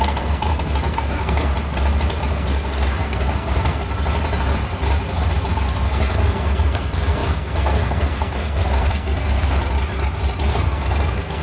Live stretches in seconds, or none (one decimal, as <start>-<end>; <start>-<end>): 1.5-2.3; 3.8-5.9; 9.6-10.5